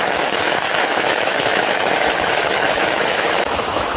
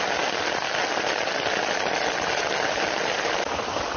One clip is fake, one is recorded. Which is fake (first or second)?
first